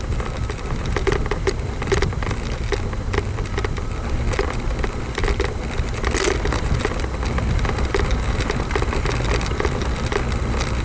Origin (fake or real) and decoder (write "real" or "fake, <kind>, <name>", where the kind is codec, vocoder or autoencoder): fake, vocoder, BigVGAN v2